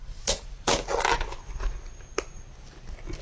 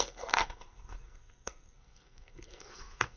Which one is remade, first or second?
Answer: second